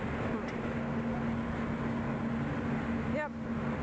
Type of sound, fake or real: real